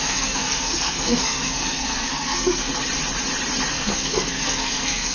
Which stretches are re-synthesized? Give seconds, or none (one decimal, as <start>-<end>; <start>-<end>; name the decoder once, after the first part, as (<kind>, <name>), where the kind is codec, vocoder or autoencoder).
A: 0.0-2.7 (codec, SNAC); 3.7-5.1